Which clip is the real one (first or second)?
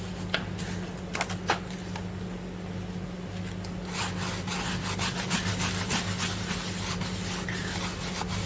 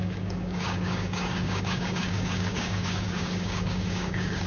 first